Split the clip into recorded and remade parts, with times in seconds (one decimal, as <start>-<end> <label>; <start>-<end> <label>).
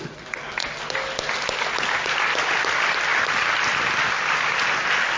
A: 0.0-0.6 remade; 0.6-2.0 recorded; 2.0-5.2 remade